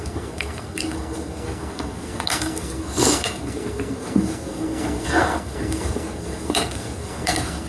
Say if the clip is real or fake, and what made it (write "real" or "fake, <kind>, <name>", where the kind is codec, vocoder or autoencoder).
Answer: fake, codec, SNAC